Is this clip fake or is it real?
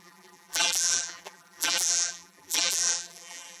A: fake